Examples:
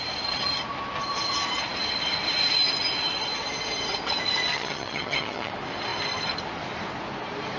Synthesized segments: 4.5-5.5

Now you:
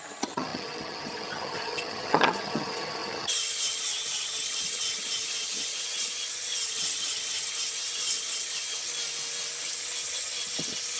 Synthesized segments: 0.0-8.9; 9.6-11.0

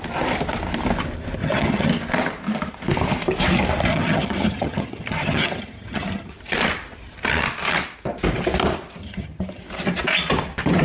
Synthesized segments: 1.4-1.9; 3.9-6.3; 9.0-9.6